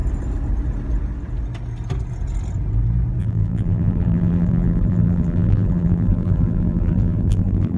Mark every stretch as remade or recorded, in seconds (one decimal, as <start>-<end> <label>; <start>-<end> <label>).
0.0-3.2 recorded; 3.2-7.8 remade